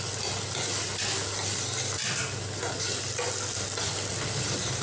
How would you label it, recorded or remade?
recorded